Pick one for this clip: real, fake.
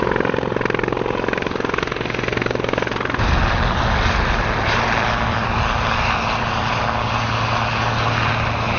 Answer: real